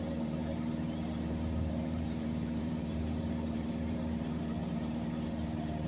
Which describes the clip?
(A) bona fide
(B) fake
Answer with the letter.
B